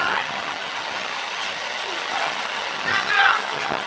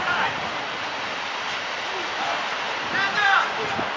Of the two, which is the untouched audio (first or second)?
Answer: second